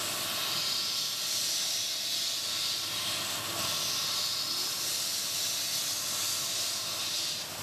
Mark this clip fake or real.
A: real